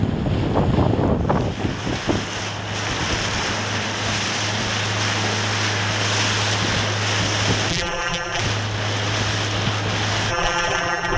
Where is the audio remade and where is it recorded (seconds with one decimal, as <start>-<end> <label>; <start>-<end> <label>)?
0.0-7.7 recorded; 7.7-8.4 remade; 8.4-10.3 recorded; 10.3-11.2 remade